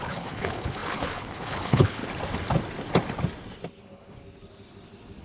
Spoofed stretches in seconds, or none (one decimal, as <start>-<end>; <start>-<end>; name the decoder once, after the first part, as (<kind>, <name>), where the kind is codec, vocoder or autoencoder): 0.0-2.0 (codec, HILCodec); 3.8-4.2

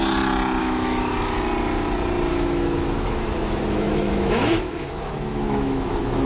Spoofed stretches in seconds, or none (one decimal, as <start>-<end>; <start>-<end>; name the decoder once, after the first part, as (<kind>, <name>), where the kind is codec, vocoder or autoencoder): 0.6-1.1 (autoencoder, DAC-VAE); 2.3-6.3

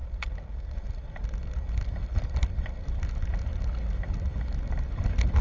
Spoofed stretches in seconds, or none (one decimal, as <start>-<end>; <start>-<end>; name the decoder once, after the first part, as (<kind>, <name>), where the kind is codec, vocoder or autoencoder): none

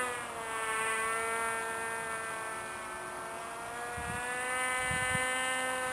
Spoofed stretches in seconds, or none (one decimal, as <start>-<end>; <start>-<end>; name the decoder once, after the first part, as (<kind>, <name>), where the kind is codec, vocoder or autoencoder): 2.5-4.8 (vocoder, BigVGAN v2)

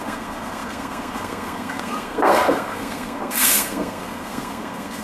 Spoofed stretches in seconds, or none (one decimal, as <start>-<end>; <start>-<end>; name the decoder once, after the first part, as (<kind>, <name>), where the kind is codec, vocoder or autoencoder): 0.0-5.0 (codec, SNAC)